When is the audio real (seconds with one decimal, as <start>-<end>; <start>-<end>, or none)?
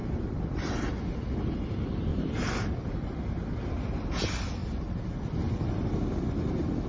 0.0-2.1; 2.7-6.9